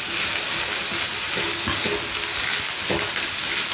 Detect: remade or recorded recorded